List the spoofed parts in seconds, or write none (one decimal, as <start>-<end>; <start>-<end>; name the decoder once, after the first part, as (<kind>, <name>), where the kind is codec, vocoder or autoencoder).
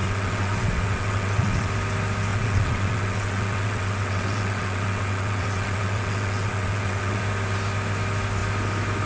0.0-1.7 (vocoder, WaveNeXt); 2.3-7.2